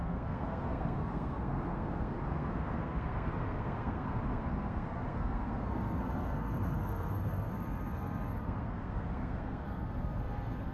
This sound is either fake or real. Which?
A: fake